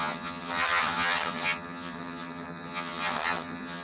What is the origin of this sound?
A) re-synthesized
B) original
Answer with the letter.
A